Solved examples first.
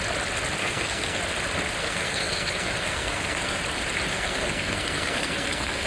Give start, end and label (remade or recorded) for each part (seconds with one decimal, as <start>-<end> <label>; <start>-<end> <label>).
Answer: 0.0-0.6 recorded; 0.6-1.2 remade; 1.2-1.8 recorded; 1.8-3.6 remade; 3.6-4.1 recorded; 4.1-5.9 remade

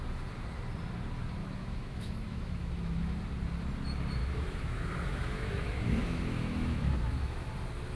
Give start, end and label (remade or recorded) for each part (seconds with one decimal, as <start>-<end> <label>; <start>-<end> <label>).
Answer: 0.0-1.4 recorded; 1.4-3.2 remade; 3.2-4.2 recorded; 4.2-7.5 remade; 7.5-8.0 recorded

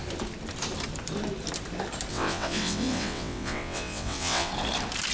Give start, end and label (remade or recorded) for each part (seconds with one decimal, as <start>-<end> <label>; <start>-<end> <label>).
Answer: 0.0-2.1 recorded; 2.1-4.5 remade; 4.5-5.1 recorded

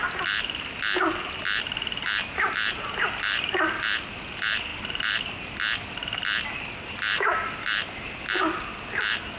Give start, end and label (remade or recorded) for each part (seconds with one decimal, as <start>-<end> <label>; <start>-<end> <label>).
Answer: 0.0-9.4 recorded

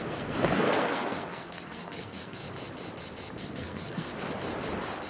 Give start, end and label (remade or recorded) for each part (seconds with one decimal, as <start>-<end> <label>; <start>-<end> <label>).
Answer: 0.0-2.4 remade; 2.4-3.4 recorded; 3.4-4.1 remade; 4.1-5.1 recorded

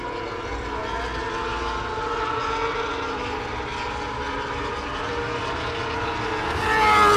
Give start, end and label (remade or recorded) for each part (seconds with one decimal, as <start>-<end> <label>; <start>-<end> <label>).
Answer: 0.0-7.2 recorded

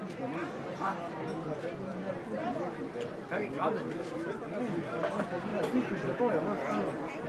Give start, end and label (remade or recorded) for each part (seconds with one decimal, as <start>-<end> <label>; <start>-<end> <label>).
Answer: 0.0-0.4 recorded; 0.4-1.3 remade; 1.3-2.5 recorded; 2.5-4.6 remade; 4.6-5.5 recorded; 5.5-6.2 remade; 6.2-7.3 recorded